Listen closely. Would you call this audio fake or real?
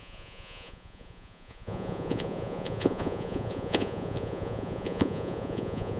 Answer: fake